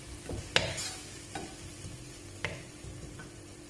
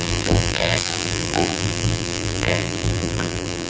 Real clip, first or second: first